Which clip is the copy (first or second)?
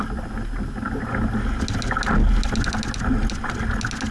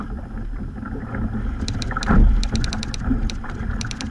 second